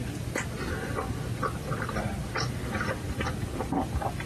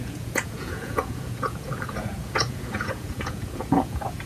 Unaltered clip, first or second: first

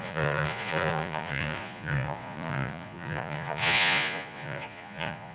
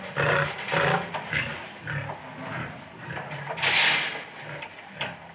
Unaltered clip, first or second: second